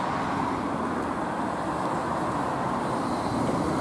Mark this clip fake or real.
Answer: real